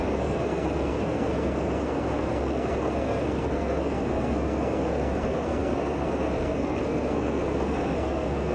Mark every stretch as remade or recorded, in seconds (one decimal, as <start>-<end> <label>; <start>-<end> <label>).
0.0-8.5 remade